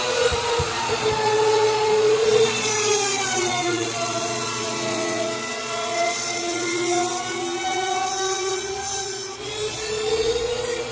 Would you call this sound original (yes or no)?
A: no